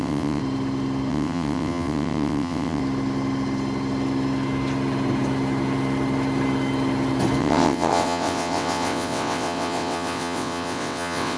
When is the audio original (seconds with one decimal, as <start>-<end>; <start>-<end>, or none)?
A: 0.4-1.1; 2.8-7.4